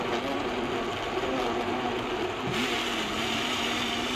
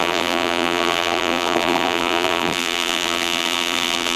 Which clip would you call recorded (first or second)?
first